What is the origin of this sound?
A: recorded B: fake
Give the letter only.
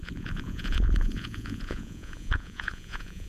B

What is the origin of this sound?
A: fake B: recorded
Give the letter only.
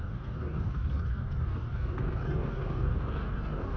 A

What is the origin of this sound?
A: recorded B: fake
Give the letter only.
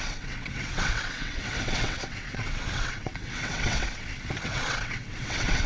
B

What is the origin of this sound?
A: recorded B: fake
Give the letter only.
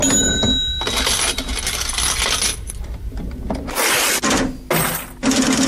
A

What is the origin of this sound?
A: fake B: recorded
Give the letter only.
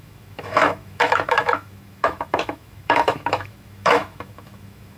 A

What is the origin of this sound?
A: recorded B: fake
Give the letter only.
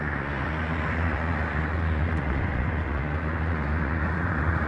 B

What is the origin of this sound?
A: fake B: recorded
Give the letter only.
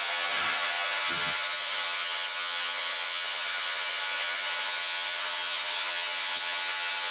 A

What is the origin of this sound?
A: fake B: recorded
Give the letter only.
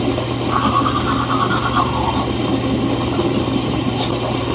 B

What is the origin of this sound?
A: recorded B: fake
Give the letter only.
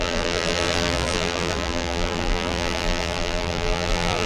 B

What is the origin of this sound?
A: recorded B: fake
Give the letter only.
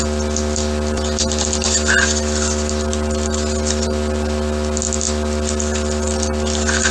A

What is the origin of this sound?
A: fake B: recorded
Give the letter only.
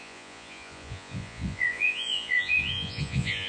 A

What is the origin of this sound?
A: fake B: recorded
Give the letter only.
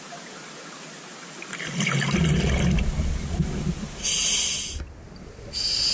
B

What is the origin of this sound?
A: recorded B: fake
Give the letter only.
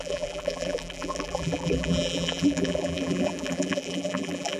B